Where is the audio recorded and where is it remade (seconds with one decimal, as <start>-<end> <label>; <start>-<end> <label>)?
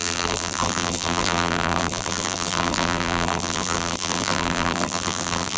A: 0.0-5.6 remade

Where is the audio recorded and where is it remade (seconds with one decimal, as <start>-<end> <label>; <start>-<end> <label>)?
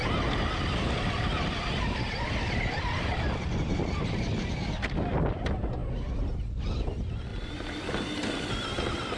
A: 0.0-3.1 recorded; 3.1-4.6 remade; 4.6-7.3 recorded; 7.3-8.5 remade; 8.5-9.2 recorded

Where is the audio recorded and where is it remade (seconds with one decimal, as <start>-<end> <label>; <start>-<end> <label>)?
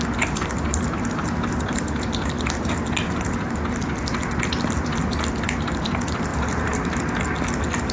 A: 0.0-0.7 recorded; 0.7-2.8 remade; 2.8-6.3 recorded; 6.3-7.0 remade; 7.0-7.9 recorded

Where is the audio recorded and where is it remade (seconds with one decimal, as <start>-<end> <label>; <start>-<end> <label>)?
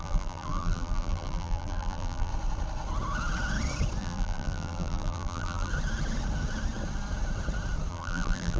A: 0.0-2.3 remade; 2.3-4.0 recorded; 4.0-5.7 remade; 5.7-7.9 recorded; 7.9-8.6 remade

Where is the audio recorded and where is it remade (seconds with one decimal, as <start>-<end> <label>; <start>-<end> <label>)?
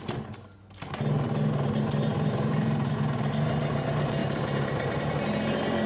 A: 0.0-2.1 recorded; 2.1-2.9 remade; 2.9-4.2 recorded; 4.2-5.1 remade; 5.1-5.9 recorded